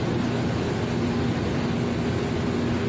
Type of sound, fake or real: real